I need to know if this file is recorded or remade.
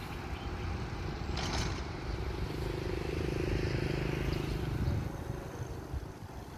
recorded